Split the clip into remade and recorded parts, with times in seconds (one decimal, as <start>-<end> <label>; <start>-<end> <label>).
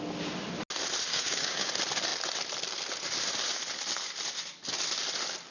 0.0-1.1 recorded; 1.1-1.7 remade; 1.7-5.5 recorded